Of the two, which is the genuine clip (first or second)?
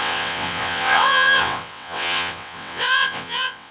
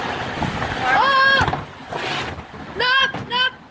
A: second